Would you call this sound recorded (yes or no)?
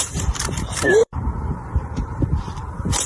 no